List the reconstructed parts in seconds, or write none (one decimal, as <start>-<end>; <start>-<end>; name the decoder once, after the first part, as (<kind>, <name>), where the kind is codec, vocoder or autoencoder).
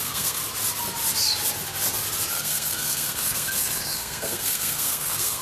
0.0-0.4 (codec, SNAC); 2.3-5.4